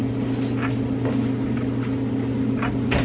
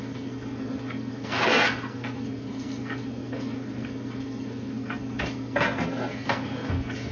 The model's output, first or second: second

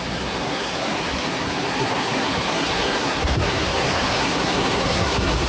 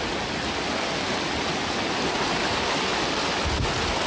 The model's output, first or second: first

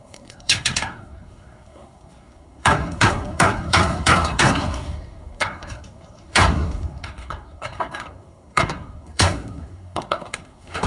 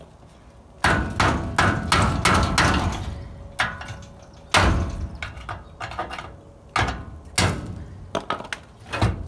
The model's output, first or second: first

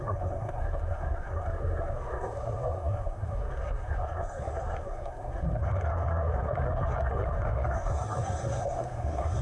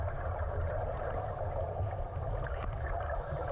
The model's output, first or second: first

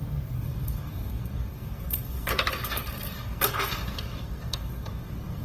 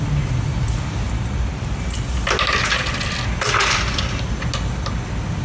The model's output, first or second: first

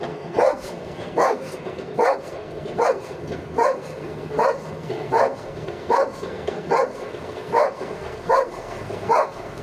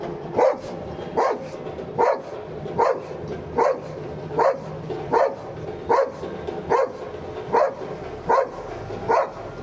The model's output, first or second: first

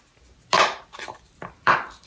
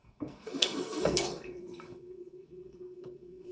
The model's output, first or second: second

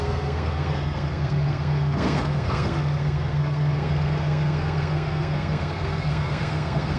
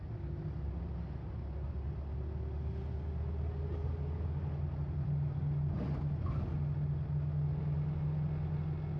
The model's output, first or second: first